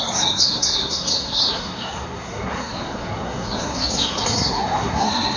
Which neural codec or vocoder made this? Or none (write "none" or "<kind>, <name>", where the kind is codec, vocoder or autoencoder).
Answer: codec, SNAC